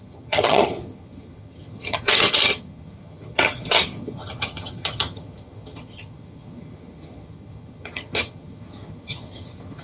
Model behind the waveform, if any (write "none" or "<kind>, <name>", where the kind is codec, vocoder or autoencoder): vocoder, HiFi-GAN